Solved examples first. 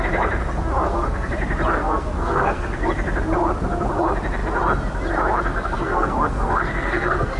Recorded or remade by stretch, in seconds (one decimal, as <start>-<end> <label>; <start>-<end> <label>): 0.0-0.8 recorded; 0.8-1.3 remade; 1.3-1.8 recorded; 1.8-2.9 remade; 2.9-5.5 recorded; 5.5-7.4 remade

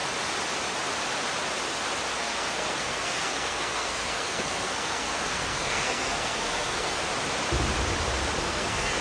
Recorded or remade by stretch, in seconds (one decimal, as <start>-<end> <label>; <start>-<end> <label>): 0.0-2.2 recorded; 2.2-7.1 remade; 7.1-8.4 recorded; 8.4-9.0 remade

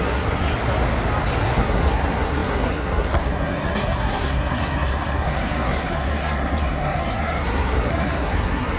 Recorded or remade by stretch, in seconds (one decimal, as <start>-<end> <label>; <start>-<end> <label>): 0.0-0.5 remade; 0.5-1.4 recorded; 1.4-8.8 remade

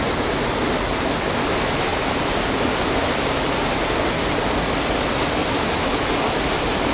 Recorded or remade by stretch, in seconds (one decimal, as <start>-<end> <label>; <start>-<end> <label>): 0.0-6.9 recorded

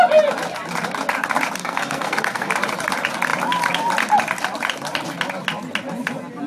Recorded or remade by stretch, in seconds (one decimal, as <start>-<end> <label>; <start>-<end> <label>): 0.0-1.6 recorded; 1.6-2.5 remade; 2.5-6.5 recorded